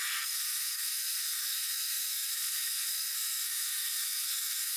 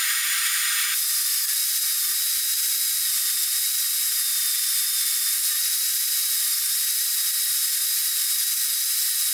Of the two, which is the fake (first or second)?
first